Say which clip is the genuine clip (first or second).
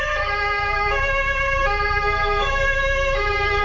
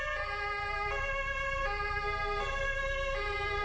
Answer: second